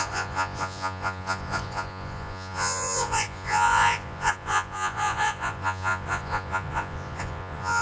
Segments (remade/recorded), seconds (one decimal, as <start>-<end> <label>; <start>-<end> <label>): 0.0-7.8 remade